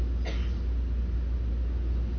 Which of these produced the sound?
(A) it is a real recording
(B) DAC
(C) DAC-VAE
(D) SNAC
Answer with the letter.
A